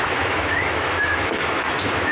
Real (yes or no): no